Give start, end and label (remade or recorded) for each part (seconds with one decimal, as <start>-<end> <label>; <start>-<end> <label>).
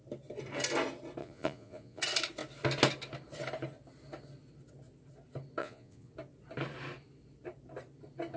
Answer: 0.0-1.2 recorded; 1.2-2.0 remade; 2.0-5.6 recorded; 5.6-6.1 remade; 6.1-8.4 recorded